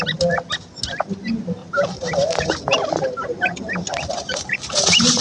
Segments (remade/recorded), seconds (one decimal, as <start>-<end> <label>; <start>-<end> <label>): 0.0-5.2 recorded